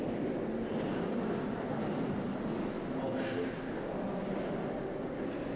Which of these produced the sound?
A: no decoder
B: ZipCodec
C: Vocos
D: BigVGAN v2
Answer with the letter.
A